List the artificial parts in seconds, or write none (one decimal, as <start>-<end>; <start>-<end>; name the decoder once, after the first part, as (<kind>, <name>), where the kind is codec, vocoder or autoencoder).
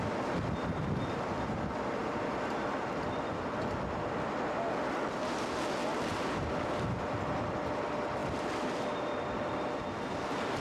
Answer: none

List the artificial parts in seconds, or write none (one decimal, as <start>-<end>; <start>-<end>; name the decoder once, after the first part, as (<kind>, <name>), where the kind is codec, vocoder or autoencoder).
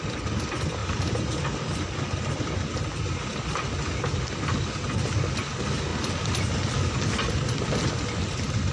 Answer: none